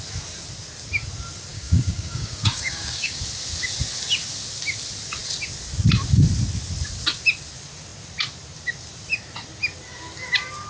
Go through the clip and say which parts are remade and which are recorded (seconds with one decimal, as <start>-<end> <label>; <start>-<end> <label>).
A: 0.0-1.5 recorded; 1.5-3.2 remade; 3.2-10.7 recorded